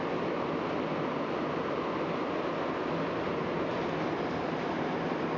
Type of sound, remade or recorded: recorded